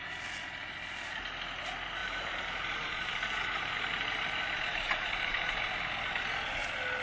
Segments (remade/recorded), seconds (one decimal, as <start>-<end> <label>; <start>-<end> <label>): 0.0-2.0 recorded; 2.0-5.5 remade; 5.5-7.0 recorded